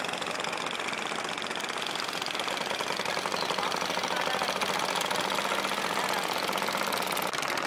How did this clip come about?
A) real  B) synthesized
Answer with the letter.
A